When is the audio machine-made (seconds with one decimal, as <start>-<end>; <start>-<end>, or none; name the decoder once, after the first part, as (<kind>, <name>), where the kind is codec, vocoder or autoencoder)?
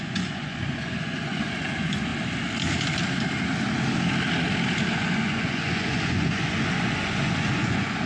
0.0-2.1 (vocoder, Vocos); 4.9-8.1